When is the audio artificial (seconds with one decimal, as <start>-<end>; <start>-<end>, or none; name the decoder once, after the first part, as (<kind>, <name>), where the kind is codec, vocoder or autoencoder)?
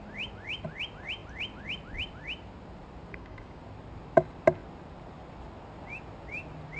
3.1-3.6 (codec, DAC)